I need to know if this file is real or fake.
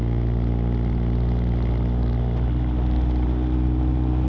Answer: real